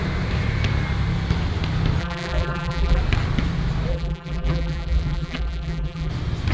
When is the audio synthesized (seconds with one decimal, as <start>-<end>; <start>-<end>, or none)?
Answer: 2.0-3.0; 3.9-6.1